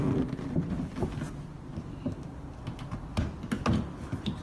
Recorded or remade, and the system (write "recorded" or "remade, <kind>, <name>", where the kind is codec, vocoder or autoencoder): recorded